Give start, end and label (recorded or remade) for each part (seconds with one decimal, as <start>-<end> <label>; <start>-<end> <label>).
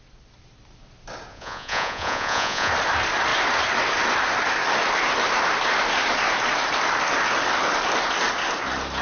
0.0-1.3 recorded; 1.3-2.7 remade; 2.7-9.0 recorded